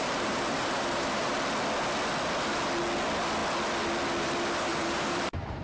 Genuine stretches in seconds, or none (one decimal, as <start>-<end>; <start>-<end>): 1.5-4.7